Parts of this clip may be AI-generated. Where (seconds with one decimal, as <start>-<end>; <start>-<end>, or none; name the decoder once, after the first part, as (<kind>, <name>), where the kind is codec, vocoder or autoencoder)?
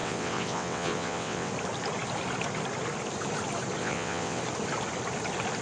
0.0-1.5 (vocoder, WaveNeXt); 3.8-4.4